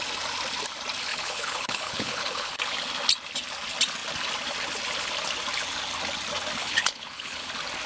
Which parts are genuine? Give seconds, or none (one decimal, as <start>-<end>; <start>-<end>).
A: 0.0-1.1; 2.6-6.6; 7.5-7.9